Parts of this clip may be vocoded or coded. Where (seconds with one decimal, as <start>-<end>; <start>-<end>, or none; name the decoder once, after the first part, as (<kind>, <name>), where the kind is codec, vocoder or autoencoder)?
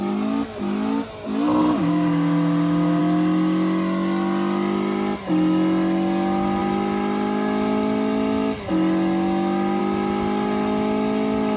1.6-3.0 (codec, DAC)